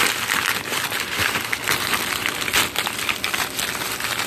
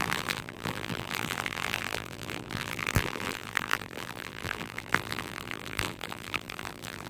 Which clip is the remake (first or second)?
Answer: second